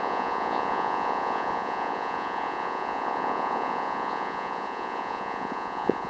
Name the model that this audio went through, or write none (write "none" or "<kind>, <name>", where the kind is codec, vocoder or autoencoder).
vocoder, Vocos